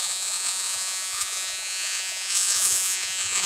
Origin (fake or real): fake